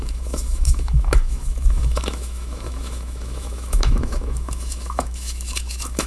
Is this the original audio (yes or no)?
no